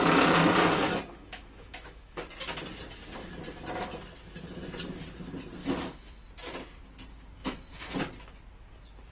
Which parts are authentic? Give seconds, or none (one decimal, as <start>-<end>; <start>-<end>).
0.0-1.1; 2.2-5.6; 6.3-7.4; 8.0-9.1